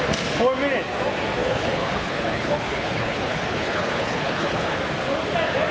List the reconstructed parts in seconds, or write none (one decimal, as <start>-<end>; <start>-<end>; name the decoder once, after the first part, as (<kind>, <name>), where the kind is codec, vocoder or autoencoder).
1.4-4.8 (codec, HILCodec)

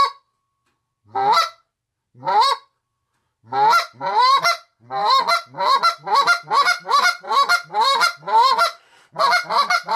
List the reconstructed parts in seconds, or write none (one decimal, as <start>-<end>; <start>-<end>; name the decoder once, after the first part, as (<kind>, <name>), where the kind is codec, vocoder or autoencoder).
none

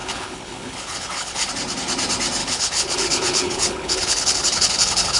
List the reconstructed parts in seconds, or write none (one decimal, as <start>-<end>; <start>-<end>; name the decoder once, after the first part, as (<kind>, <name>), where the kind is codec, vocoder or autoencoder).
0.0-1.5 (codec, HILCodec); 2.4-5.2

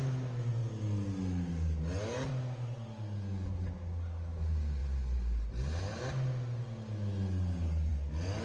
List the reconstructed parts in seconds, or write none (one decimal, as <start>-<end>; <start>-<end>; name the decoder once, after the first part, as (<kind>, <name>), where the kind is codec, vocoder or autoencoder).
none

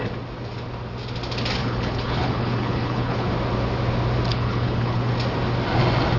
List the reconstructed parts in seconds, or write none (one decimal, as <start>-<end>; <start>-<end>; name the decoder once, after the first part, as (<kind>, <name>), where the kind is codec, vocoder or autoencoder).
1.6-3.3 (codec, HILCodec); 4.3-5.1

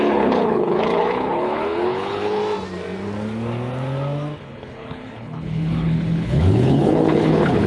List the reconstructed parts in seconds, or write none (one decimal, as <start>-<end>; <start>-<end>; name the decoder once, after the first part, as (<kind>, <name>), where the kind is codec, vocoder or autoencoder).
0.0-2.4 (codec, HILCodec); 4.4-7.7

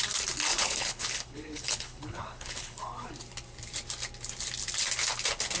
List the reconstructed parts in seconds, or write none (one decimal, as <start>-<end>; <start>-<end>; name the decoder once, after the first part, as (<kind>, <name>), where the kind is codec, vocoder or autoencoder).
0.5-3.1 (codec, HILCodec)

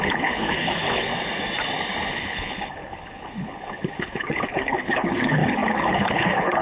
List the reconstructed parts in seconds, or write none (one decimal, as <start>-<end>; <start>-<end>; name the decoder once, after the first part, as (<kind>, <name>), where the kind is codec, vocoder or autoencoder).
0.0-1.1 (codec, HILCodec); 2.1-6.6